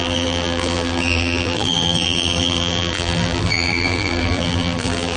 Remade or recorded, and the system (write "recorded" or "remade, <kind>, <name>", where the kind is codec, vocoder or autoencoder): remade, vocoder, BigVGAN v2